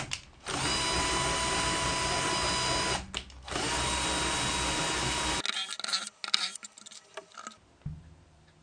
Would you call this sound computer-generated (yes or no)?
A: no